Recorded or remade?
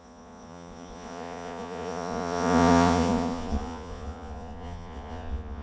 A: remade